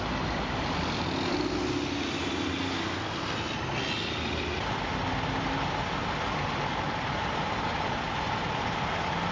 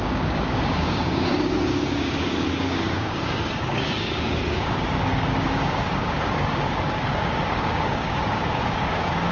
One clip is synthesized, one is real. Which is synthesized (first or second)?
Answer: second